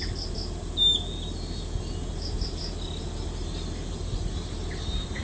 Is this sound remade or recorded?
recorded